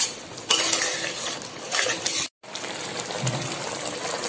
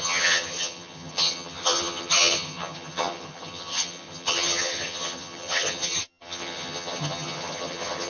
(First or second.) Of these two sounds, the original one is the first